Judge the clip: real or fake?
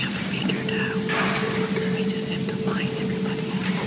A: real